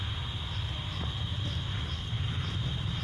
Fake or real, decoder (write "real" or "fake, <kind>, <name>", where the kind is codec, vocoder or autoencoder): real